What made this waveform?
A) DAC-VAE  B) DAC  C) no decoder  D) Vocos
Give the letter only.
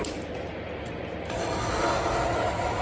C